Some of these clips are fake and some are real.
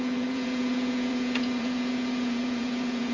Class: fake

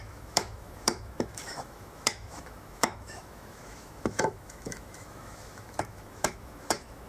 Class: fake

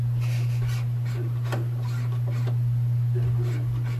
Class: real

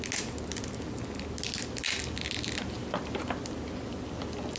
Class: real